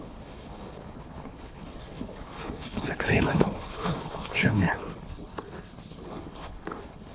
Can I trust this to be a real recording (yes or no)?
no